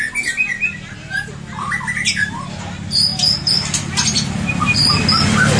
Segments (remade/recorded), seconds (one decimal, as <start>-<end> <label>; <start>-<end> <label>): 0.0-5.6 recorded